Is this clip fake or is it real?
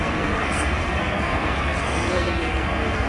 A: fake